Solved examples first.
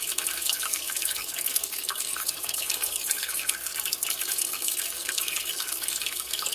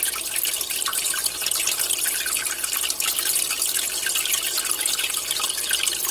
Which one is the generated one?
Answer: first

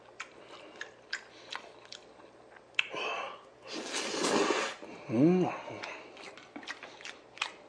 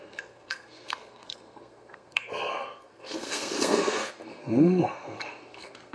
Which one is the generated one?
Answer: second